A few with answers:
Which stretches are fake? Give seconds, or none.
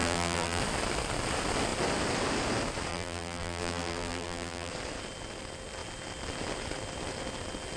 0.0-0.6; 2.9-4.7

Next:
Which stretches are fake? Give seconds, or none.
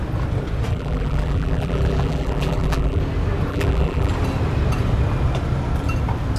0.7-3.0; 3.5-4.1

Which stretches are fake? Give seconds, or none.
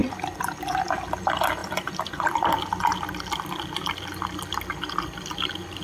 1.6-2.2